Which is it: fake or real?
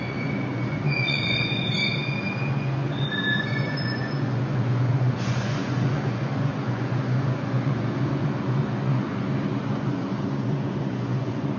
fake